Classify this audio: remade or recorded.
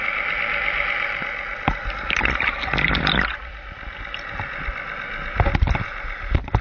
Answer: recorded